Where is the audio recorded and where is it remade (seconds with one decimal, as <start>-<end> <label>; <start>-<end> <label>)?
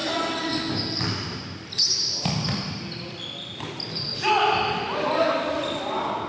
0.0-6.3 recorded